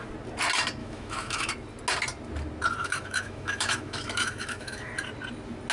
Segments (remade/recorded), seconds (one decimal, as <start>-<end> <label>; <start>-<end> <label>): 0.0-0.8 recorded; 0.8-1.5 remade; 1.5-2.8 recorded; 2.8-4.9 remade; 4.9-5.7 recorded